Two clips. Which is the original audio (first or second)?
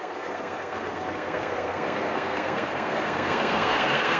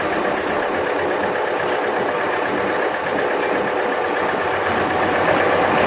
second